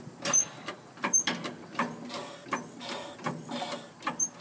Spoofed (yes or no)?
no